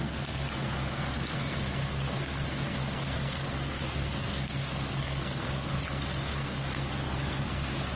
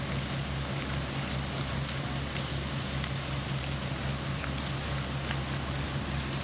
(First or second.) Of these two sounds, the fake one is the first